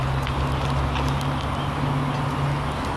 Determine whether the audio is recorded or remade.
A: recorded